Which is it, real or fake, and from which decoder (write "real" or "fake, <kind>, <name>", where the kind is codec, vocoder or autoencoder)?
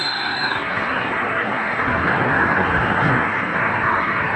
fake, codec, SNAC